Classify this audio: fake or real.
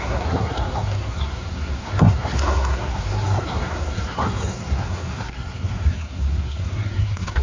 fake